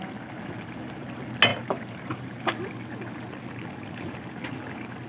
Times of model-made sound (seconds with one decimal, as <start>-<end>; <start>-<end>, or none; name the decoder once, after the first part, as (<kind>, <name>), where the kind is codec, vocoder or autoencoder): 1.5-2.6 (vocoder, BigVGAN v2)